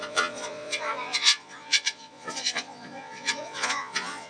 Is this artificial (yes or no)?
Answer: yes